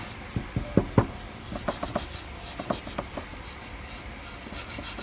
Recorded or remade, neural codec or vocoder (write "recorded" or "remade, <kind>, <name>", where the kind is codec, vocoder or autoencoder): remade, vocoder, BigVGAN v2